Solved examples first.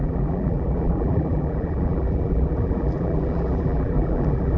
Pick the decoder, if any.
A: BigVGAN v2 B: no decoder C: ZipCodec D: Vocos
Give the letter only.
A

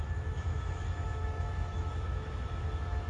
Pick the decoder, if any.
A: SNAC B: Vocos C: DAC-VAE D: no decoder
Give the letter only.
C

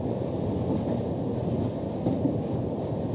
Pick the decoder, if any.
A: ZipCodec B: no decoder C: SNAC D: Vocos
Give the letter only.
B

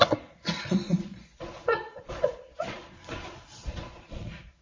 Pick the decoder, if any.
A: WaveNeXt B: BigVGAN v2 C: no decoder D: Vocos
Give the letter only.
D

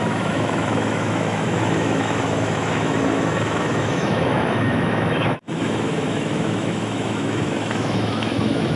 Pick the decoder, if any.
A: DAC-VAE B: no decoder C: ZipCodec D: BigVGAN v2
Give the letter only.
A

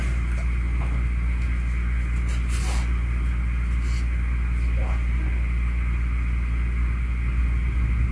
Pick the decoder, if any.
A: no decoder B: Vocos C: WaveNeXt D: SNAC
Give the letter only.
A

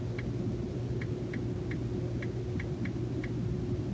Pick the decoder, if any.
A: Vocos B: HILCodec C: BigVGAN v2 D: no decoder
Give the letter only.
D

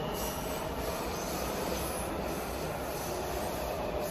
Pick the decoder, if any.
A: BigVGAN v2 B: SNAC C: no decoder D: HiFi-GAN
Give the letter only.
C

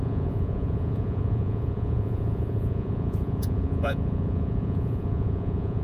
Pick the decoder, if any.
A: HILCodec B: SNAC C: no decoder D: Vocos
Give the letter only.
D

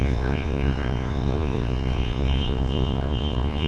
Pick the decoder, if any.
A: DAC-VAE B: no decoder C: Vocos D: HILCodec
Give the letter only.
C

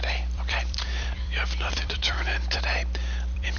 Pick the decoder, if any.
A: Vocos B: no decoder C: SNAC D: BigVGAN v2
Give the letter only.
D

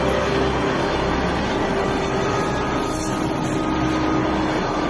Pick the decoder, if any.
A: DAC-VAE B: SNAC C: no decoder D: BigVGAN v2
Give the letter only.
C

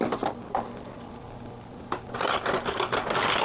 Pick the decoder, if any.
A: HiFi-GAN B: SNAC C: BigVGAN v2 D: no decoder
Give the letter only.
D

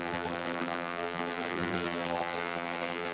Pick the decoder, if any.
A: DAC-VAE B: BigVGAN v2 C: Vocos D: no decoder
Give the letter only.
B